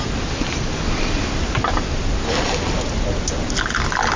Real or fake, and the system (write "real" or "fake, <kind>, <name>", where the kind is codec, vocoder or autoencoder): real